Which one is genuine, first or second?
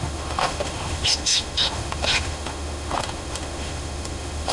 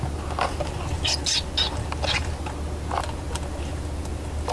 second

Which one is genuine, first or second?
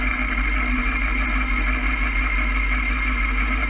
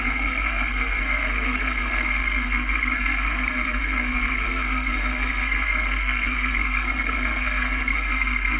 first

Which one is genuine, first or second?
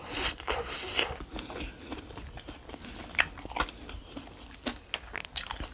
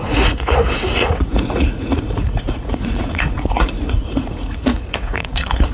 first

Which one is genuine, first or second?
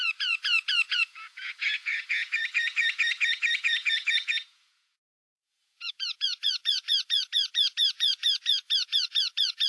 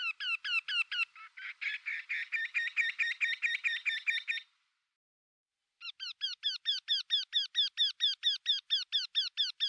second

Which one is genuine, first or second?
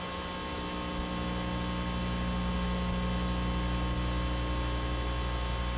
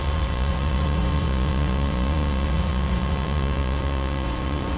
first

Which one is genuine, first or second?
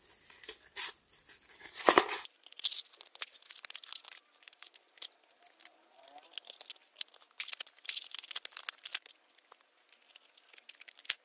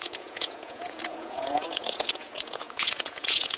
first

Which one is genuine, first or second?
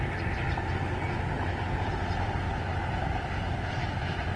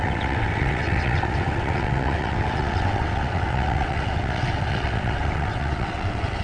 first